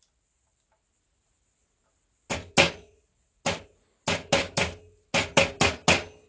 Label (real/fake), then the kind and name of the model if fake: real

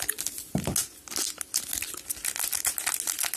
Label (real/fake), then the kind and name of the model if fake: real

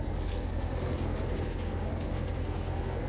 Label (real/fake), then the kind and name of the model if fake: fake, codec, SNAC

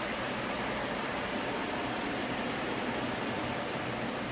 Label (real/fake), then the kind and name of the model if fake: fake, vocoder, BigVGAN v2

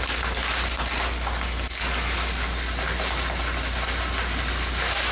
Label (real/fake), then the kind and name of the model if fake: real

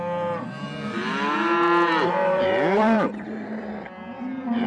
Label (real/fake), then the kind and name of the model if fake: fake, vocoder, BigVGAN v2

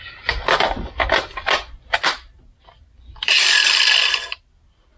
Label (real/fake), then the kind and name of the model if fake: real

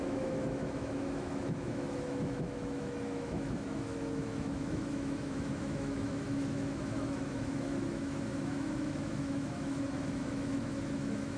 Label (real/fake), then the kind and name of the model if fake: fake, autoencoder, DAC-VAE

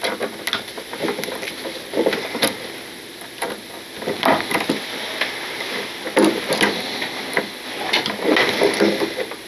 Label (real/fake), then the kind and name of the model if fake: real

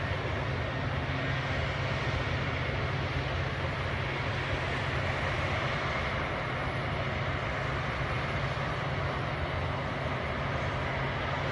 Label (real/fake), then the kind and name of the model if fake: real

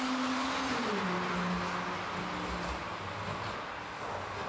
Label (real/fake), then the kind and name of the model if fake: real